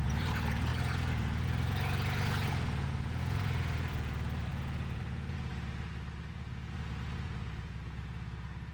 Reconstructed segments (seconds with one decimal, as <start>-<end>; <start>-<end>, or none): 0.0-5.5; 6.3-8.7